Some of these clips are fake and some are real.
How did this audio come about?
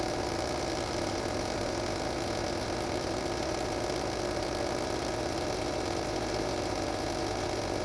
real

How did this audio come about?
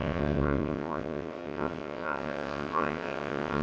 fake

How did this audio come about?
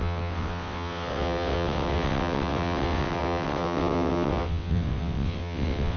fake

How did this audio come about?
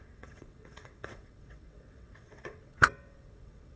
fake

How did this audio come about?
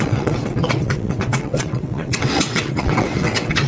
fake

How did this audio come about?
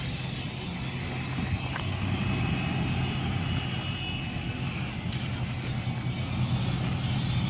real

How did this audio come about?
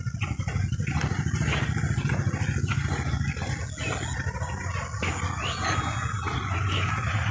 real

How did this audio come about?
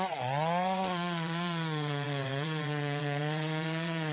fake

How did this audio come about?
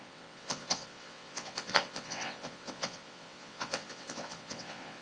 fake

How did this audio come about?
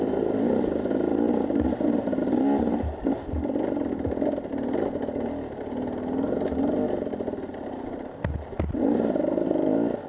real